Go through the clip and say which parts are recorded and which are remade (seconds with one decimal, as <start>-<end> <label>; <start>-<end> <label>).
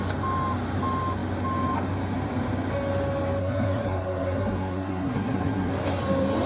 0.0-3.4 recorded; 3.4-5.7 remade; 5.7-6.5 recorded